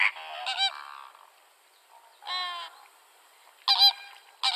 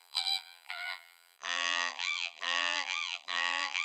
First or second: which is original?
first